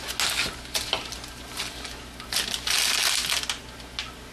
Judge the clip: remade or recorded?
recorded